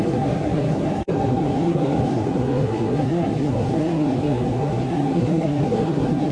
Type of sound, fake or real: fake